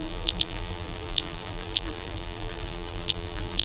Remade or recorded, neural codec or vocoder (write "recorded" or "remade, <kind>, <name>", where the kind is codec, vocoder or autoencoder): remade, vocoder, BigVGAN v2